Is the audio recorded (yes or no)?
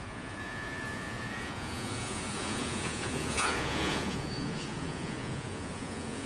no